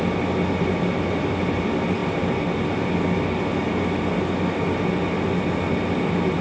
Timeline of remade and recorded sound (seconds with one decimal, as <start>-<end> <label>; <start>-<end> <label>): 0.0-6.4 recorded